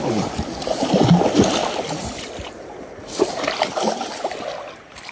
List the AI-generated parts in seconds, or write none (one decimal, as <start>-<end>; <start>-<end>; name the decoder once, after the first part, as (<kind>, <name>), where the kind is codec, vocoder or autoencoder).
none